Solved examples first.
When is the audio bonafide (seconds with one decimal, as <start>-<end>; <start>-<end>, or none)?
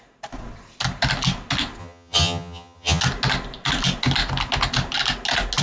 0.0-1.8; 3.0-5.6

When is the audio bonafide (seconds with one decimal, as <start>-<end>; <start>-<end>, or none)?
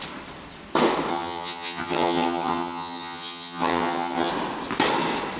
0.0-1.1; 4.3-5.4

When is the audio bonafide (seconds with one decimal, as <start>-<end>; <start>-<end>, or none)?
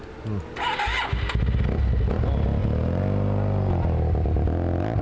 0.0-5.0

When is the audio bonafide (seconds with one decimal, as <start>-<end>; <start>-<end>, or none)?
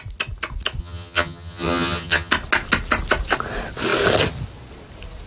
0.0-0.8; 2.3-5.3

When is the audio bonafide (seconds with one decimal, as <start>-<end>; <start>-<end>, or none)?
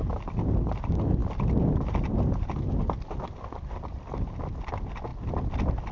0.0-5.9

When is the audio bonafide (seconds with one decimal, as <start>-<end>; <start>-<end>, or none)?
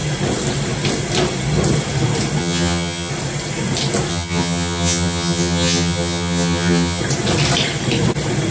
0.0-2.4; 3.1-4.1; 7.0-8.5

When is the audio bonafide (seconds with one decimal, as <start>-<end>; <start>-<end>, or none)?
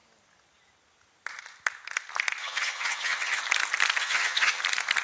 0.0-2.4; 3.4-4.0; 4.6-5.0